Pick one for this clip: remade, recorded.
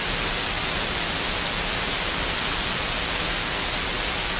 recorded